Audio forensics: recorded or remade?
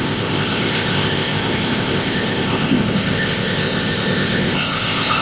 remade